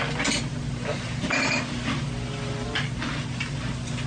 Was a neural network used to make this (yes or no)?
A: no